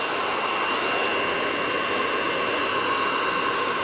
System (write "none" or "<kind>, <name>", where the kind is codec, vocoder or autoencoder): none